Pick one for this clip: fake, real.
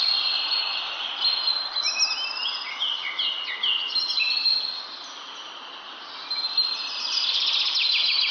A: real